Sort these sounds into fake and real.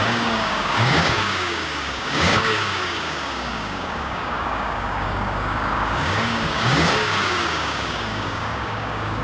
fake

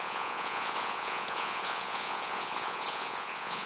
fake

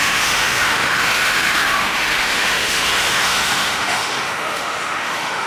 fake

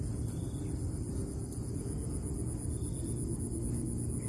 real